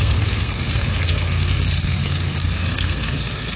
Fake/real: fake